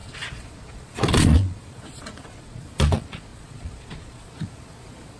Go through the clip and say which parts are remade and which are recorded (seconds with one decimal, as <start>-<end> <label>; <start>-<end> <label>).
0.0-5.2 remade